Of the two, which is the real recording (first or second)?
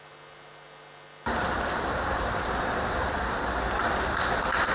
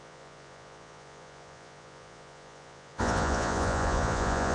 first